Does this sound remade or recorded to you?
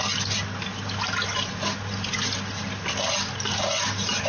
recorded